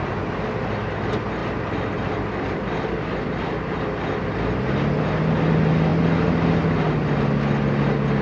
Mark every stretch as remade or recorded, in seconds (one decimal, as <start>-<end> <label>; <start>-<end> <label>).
0.0-8.2 recorded